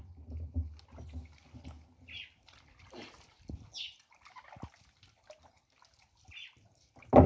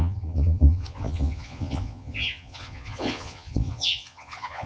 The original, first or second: first